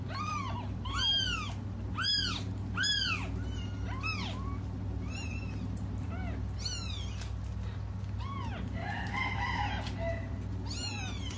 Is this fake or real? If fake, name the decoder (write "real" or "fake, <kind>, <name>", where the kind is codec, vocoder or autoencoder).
real